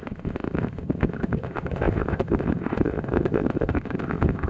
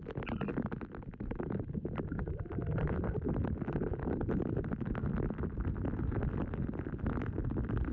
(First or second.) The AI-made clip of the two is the first